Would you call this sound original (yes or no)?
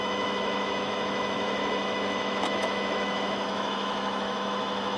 no